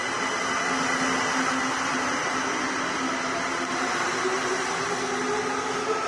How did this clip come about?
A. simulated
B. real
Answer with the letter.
B